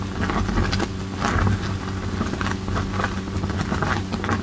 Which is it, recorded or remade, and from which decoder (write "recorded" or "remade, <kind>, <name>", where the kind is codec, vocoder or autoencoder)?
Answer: recorded